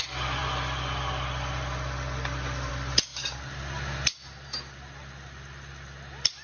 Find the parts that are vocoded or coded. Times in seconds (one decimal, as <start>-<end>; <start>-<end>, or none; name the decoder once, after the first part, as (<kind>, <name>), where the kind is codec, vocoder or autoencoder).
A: none

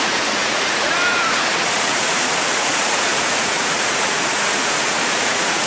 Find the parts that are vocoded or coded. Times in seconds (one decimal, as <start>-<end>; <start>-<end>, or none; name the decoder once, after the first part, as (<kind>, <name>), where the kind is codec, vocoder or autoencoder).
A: 0.0-5.7 (vocoder, Vocos)

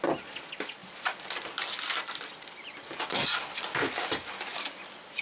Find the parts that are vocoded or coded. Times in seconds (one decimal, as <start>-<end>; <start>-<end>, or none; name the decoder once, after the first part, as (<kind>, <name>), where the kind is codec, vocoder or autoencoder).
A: 0.8-3.6 (vocoder, BigVGAN v2); 4.5-5.2

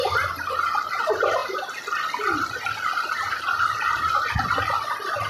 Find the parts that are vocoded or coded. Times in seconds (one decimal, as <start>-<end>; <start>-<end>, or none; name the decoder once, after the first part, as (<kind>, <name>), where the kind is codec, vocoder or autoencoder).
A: none